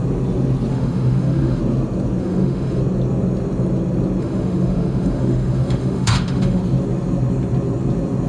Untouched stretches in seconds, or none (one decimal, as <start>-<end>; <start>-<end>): 0.0-0.7; 1.6-2.2; 2.8-4.2; 6.6-8.3